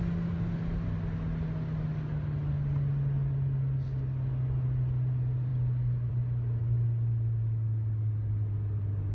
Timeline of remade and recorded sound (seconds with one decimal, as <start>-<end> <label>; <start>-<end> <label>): 0.0-9.1 recorded